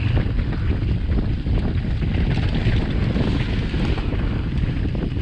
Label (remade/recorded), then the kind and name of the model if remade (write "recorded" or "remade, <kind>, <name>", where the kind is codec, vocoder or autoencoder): recorded